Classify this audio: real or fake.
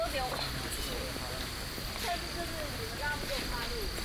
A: real